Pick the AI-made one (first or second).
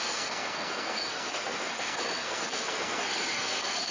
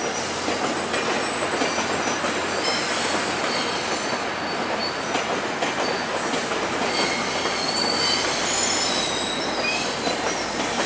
first